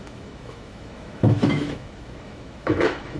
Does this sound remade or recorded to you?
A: remade